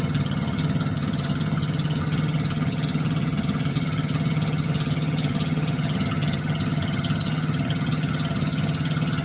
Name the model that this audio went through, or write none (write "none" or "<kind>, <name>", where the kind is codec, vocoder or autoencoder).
vocoder, HiFi-GAN